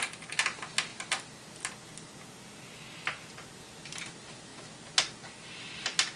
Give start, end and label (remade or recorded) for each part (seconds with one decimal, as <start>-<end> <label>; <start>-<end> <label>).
0.0-6.2 recorded

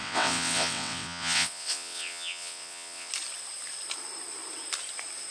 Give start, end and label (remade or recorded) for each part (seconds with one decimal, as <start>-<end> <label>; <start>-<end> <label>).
0.0-3.1 remade; 3.1-5.3 recorded

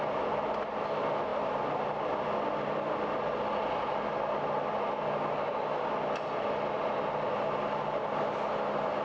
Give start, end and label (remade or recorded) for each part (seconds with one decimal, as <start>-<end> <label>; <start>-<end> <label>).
0.0-9.0 recorded

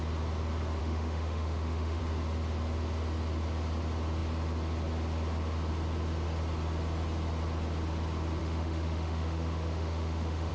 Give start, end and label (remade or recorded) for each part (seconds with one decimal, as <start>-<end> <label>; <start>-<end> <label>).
0.0-0.8 recorded; 0.8-2.0 remade; 2.0-8.4 recorded; 8.4-10.5 remade

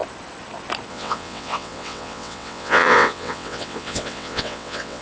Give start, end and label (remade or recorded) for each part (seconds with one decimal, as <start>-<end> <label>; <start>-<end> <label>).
0.0-0.9 recorded; 0.9-5.0 remade

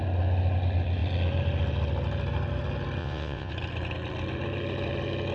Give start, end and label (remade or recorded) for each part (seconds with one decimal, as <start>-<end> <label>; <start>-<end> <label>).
0.0-3.0 recorded; 3.0-3.5 remade; 3.5-5.3 recorded

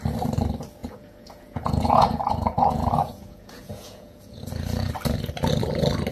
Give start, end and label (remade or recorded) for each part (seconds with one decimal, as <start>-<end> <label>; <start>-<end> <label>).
0.0-0.8 recorded; 0.8-4.5 remade; 4.5-6.1 recorded